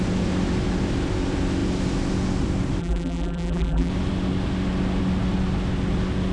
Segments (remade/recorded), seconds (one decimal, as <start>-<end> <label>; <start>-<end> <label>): 0.0-2.8 recorded; 2.8-3.9 remade; 3.9-6.3 recorded

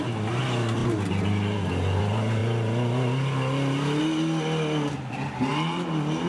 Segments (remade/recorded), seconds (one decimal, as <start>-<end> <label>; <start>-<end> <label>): 0.0-6.3 recorded

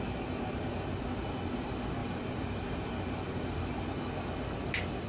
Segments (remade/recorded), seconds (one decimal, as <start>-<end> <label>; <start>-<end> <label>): 0.0-2.0 recorded; 2.0-3.8 remade; 3.8-5.1 recorded

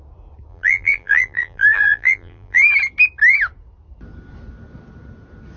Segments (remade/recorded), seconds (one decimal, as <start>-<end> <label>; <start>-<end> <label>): 0.0-0.5 recorded; 0.5-2.6 remade; 2.6-5.6 recorded

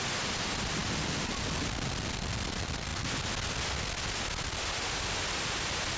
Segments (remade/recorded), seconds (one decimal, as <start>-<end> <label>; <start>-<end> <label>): 0.0-6.0 recorded

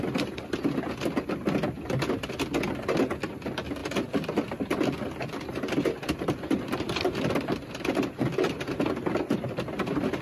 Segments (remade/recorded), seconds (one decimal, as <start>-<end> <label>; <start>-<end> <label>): 0.0-3.8 recorded; 3.8-7.4 remade; 7.4-10.2 recorded